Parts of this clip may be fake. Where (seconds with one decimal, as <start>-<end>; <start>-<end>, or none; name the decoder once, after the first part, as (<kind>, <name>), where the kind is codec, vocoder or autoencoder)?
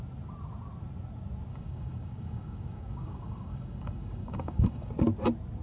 1.5-4.9 (codec, DAC)